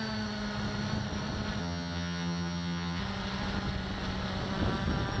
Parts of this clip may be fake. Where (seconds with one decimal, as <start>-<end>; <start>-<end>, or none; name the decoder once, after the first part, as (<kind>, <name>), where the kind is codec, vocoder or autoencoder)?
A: 1.6-3.0 (vocoder, HiFi-GAN)